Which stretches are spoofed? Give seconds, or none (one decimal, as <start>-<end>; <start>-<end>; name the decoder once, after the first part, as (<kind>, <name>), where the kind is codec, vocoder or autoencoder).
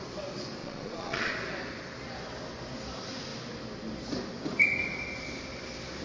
0.6-1.3 (vocoder, Vocos)